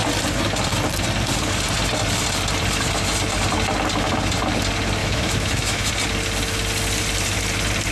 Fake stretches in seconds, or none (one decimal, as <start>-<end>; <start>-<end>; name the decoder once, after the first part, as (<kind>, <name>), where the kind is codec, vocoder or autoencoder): 5.0-5.9 (autoencoder, DAC-VAE)